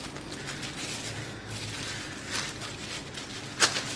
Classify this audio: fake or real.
real